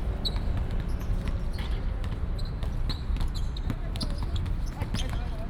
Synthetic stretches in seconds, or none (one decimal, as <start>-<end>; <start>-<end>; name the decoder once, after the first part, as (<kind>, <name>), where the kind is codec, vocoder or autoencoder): none